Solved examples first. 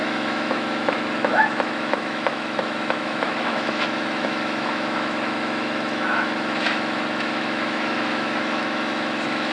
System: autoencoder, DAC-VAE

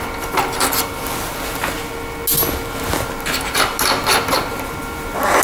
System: none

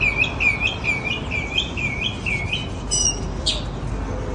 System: none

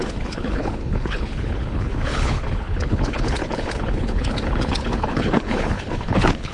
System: codec, HILCodec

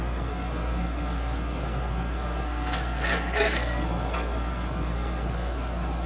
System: codec, SNAC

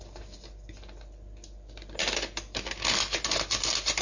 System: none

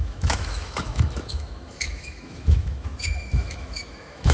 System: autoencoder, DAC-VAE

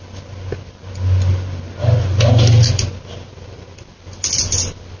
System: none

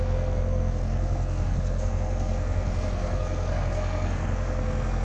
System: codec, SNAC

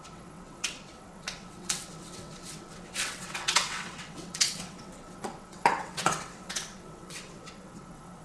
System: vocoder, WaveNeXt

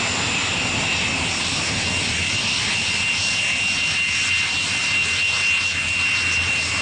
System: none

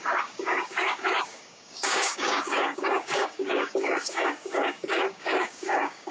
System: codec, DAC